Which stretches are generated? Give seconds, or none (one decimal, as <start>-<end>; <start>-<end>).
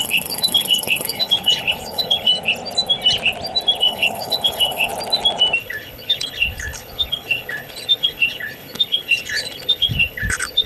0.0-2.3; 3.8-4.9; 5.6-10.7